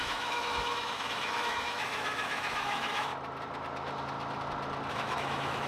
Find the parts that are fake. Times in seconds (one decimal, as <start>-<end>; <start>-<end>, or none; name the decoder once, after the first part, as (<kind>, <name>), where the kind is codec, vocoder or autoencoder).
0.0-3.1 (autoencoder, DAC-VAE); 4.9-5.7